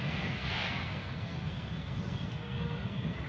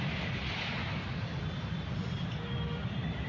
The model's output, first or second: first